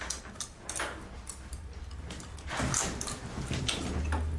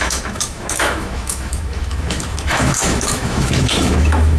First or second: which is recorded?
first